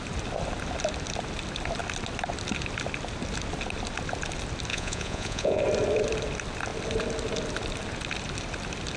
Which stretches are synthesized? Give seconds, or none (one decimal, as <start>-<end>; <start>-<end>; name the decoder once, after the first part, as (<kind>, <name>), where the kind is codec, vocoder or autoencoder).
4.7-5.6 (vocoder, Vocos)